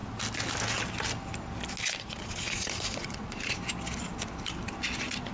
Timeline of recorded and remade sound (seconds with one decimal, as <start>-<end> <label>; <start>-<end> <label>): 0.0-2.2 recorded; 2.2-3.5 remade; 3.5-5.3 recorded